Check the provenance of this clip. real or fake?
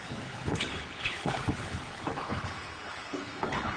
fake